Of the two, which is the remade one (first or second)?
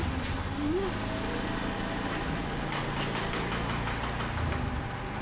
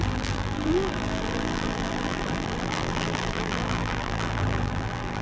second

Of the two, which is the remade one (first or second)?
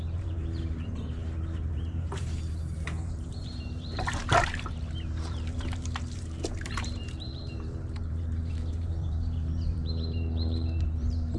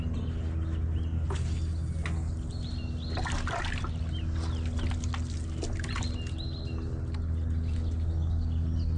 first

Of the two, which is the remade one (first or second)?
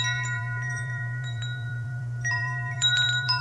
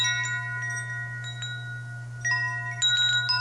first